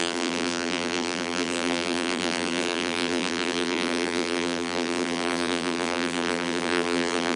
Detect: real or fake fake